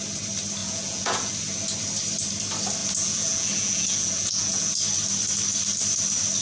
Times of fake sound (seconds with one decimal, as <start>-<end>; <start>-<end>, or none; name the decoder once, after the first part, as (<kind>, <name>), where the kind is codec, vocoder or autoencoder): 0.6-1.3 (vocoder, Vocos); 2.8-4.7